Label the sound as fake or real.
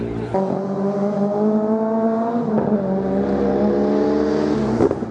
real